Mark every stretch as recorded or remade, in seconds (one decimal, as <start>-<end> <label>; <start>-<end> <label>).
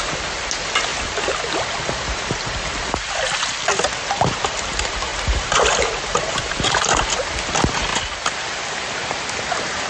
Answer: 0.0-9.9 recorded